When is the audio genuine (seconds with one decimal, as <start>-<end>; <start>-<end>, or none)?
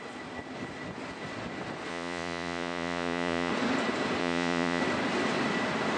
0.0-1.9; 3.5-4.2; 4.8-6.0